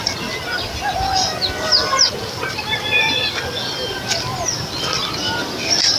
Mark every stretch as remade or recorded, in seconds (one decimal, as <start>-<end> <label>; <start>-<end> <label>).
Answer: 0.0-6.0 recorded